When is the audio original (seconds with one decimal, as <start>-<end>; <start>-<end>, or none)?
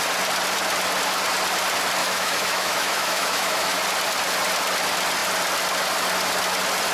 0.0-2.0; 3.8-6.9